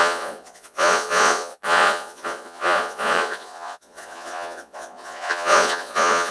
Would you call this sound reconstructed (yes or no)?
yes